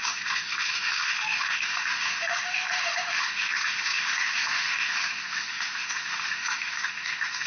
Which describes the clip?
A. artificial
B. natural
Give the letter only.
A